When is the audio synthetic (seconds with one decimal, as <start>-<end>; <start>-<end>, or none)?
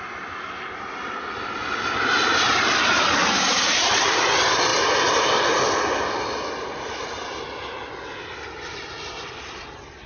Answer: none